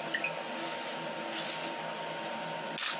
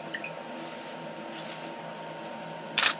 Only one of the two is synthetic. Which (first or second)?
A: second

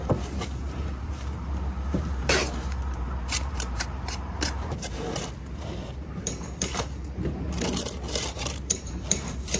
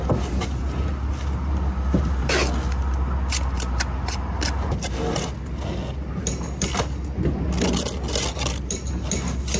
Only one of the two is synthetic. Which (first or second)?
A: first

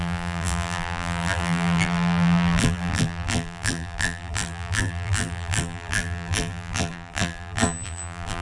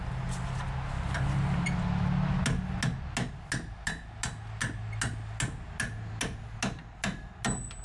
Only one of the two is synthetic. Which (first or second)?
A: first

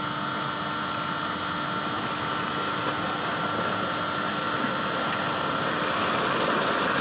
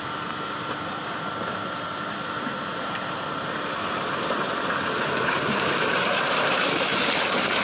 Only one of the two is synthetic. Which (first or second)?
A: second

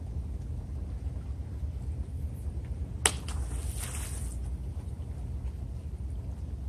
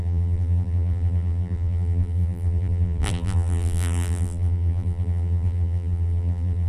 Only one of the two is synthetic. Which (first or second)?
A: second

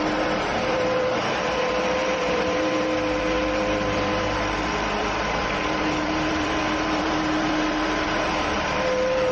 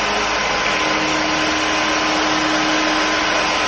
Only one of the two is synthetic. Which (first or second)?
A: first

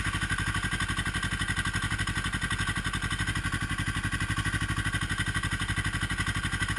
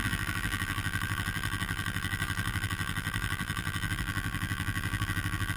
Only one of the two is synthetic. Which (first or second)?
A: second